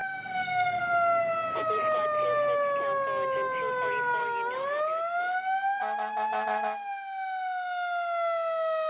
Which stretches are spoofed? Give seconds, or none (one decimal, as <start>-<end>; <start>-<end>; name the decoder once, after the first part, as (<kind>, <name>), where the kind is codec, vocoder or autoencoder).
0.0-0.8 (codec, SNAC)